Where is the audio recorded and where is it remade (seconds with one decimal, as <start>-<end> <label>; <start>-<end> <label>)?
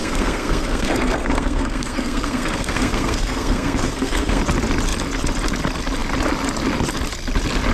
0.0-4.4 remade; 4.4-7.7 recorded